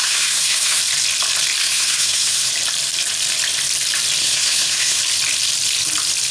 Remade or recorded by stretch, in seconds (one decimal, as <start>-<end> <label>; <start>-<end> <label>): 0.0-0.8 remade; 0.8-1.6 recorded; 1.6-2.5 remade; 2.5-4.2 recorded; 4.2-5.0 remade; 5.0-6.3 recorded